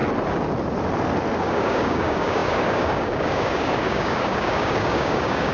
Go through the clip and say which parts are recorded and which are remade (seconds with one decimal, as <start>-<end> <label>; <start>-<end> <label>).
0.0-1.4 recorded; 1.4-5.5 remade